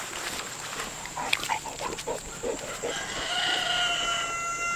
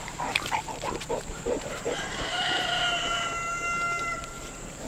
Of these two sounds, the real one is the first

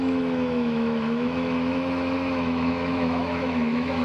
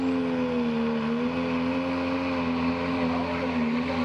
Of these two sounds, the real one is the second